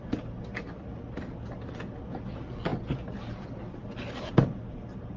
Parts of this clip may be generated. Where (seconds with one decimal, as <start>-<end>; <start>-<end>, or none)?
none